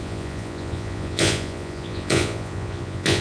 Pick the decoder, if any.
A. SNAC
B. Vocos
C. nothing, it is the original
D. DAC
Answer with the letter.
B